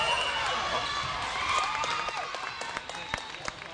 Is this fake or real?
real